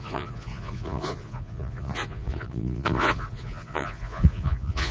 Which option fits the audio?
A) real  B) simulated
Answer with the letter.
B